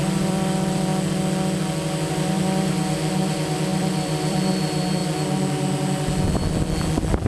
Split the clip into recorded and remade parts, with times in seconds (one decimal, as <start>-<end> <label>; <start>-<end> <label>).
0.0-0.9 remade; 0.9-2.1 recorded; 2.1-2.8 remade; 2.8-3.3 recorded; 3.3-5.0 remade; 5.0-7.3 recorded